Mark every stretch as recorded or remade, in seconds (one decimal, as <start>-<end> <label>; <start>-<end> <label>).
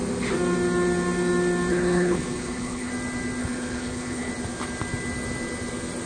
0.0-1.7 recorded; 1.7-2.9 remade; 2.9-3.4 recorded; 3.4-4.3 remade; 4.3-6.1 recorded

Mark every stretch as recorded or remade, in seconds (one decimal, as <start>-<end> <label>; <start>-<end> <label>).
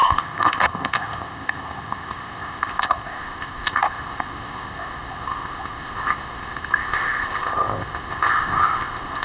0.0-9.2 remade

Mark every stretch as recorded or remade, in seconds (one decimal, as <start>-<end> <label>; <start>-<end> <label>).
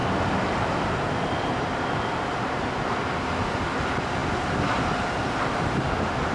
0.0-6.3 recorded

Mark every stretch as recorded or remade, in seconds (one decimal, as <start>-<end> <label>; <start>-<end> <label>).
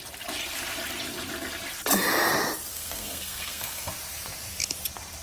0.0-2.7 recorded; 2.7-3.9 remade; 3.9-5.2 recorded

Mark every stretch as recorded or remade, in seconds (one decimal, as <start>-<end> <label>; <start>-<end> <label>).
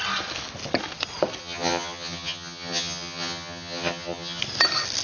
0.0-1.4 recorded; 1.4-4.4 remade; 4.4-5.0 recorded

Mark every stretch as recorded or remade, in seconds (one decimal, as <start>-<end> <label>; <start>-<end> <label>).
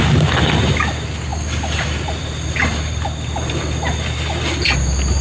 0.0-5.2 recorded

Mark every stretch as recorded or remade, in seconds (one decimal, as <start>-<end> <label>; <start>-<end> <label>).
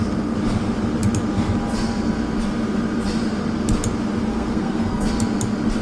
0.0-4.3 recorded; 4.3-5.1 remade; 5.1-5.8 recorded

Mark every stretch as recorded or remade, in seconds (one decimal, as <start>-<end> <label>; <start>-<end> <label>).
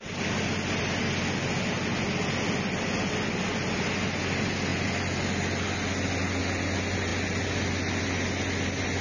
0.0-9.0 recorded